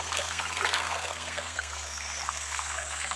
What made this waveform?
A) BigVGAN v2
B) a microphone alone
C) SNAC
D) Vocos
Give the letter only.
C